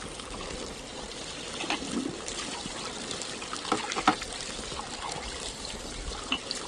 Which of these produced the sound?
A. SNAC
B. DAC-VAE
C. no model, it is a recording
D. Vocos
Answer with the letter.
C